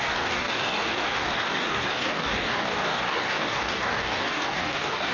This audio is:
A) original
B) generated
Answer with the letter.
B